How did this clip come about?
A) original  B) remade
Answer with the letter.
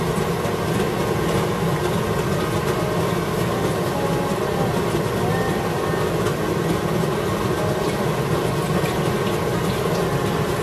A